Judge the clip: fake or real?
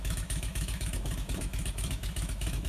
fake